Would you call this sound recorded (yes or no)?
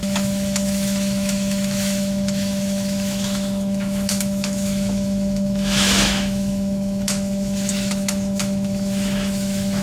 no